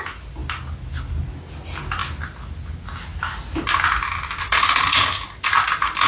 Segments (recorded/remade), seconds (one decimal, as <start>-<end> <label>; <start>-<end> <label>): 0.0-6.1 recorded